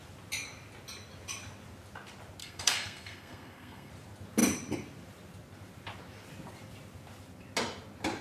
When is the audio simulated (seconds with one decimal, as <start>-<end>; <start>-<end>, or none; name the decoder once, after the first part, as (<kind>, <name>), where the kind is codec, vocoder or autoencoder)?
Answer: 2.4-3.9 (codec, SNAC)